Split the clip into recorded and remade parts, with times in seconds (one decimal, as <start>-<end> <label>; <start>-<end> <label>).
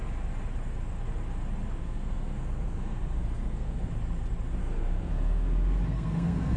0.0-1.8 recorded; 1.8-3.9 remade; 3.9-4.6 recorded; 4.6-6.6 remade